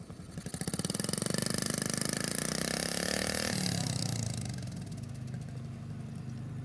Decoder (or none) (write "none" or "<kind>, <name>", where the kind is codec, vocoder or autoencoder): none